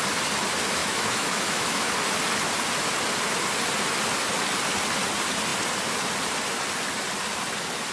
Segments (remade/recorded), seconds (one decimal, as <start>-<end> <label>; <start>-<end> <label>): 0.0-0.8 recorded; 0.8-1.9 remade; 1.9-7.9 recorded